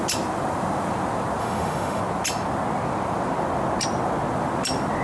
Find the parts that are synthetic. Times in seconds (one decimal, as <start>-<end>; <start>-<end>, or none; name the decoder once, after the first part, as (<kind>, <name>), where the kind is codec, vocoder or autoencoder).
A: 1.4-2.0 (autoencoder, DAC-VAE)